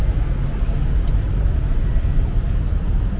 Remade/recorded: recorded